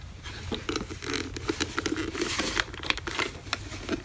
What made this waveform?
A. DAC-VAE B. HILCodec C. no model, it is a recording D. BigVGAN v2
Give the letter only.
C